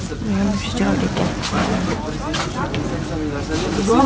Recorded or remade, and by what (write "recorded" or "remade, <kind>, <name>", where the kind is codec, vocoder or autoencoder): recorded